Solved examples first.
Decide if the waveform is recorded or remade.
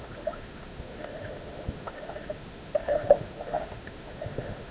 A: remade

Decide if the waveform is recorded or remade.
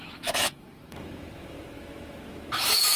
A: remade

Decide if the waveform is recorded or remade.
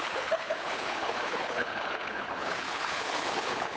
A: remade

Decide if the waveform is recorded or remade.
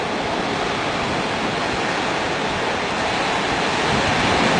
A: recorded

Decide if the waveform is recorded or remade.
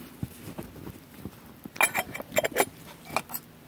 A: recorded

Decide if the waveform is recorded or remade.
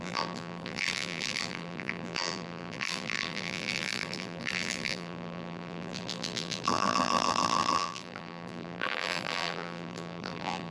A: remade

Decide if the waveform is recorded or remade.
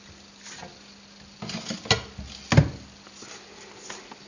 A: recorded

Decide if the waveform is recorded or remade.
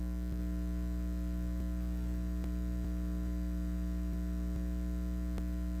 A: recorded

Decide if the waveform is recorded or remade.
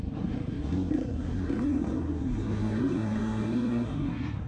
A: remade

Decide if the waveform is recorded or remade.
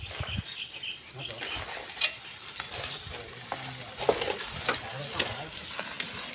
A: recorded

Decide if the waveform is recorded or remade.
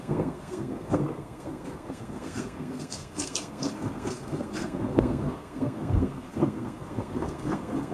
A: remade